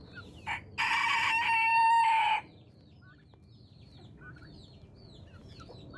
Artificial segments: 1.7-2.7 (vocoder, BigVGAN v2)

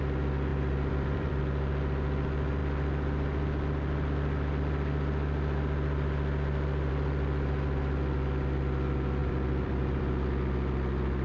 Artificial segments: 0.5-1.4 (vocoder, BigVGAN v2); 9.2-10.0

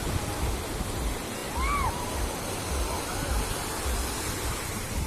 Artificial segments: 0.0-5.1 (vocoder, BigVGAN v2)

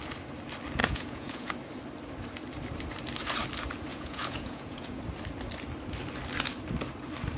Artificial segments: 0.8-1.5 (vocoder, Vocos); 3.9-5.0

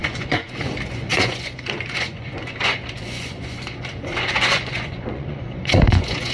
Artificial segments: 0.0-6.3 (vocoder, Vocos)

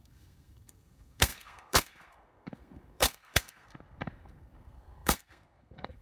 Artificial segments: 0.0-6.0 (codec, SNAC)

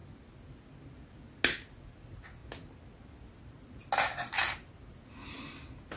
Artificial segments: none